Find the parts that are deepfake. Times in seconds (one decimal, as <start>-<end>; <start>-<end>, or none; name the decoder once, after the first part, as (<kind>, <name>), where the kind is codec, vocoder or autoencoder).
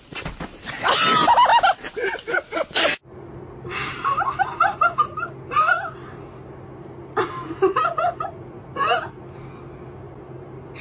none